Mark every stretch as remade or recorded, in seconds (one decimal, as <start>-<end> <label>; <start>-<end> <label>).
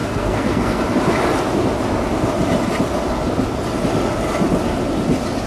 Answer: 0.0-0.8 remade; 0.8-5.5 recorded